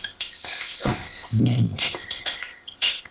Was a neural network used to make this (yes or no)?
yes